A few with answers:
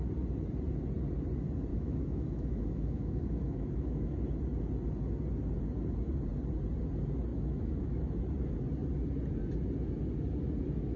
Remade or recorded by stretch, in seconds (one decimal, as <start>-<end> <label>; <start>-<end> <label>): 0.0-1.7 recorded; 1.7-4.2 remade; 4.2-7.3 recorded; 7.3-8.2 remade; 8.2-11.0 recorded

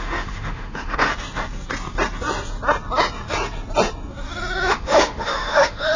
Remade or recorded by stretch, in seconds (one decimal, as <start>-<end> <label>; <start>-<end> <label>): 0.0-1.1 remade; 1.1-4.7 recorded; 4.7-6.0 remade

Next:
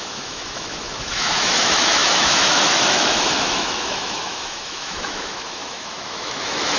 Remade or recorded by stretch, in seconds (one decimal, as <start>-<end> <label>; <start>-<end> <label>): 0.0-6.8 remade

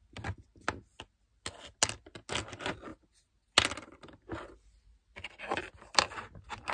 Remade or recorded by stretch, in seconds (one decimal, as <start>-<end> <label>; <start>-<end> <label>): 0.0-6.7 recorded